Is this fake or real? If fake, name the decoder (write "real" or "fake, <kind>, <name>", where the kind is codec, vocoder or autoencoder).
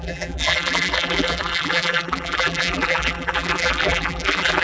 fake, vocoder, BigVGAN v2